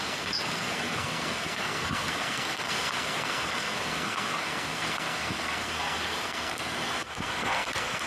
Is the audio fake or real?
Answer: fake